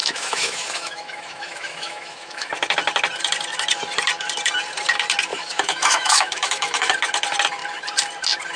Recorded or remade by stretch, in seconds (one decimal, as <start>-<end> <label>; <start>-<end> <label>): 0.0-2.5 remade; 2.5-5.3 recorded; 5.3-6.9 remade; 6.9-8.6 recorded